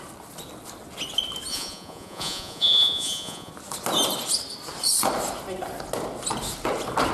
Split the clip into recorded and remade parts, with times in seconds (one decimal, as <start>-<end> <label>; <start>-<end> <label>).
0.0-1.5 recorded; 1.5-3.5 remade; 3.5-7.1 recorded